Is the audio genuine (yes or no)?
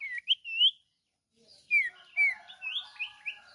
yes